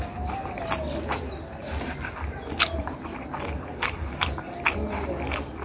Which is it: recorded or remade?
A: recorded